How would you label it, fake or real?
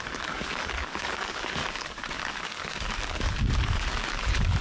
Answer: fake